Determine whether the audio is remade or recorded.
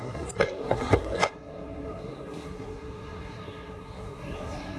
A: remade